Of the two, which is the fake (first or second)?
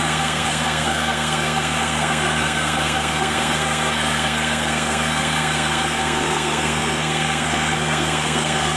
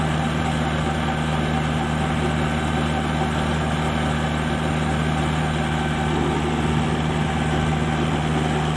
first